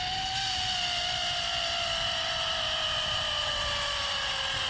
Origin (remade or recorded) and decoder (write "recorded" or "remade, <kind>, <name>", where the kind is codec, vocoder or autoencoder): recorded